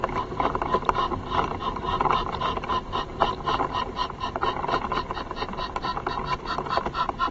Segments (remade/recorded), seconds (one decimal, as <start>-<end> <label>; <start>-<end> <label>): 0.0-2.7 remade; 2.7-5.0 recorded; 5.0-5.9 remade; 5.9-6.4 recorded; 6.4-7.3 remade